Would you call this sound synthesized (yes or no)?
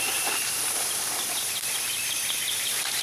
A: yes